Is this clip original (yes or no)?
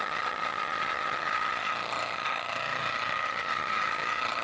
no